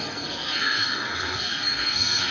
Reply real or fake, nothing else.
fake